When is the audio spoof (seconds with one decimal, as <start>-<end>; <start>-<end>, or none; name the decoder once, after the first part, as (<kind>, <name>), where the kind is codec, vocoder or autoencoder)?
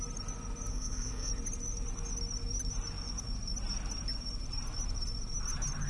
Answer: 0.7-1.3 (codec, SNAC)